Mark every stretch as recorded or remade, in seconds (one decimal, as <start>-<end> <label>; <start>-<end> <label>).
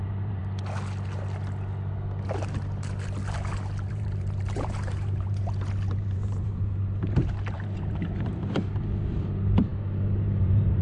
0.0-0.4 remade; 0.4-3.9 recorded; 3.9-10.8 remade